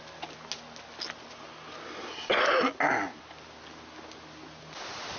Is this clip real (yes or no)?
yes